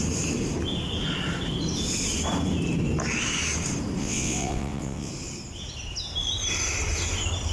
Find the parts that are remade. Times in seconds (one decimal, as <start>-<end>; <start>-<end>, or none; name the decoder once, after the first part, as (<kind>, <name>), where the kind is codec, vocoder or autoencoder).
4.0-5.1 (vocoder, WaveNeXt)

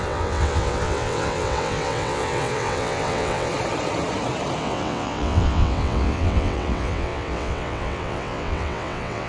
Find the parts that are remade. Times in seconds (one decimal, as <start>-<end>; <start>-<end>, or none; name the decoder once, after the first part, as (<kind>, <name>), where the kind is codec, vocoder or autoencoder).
0.0-3.5 (vocoder, WaveNeXt); 4.6-9.3